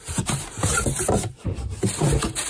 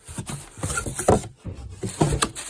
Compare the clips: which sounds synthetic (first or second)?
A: first